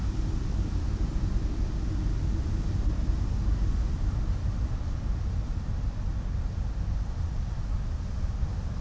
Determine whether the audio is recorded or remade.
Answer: recorded